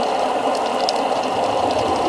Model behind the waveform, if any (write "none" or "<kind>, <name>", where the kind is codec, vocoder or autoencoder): none